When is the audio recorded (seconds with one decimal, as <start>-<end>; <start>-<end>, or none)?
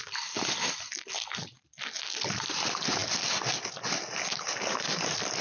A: 0.0-5.4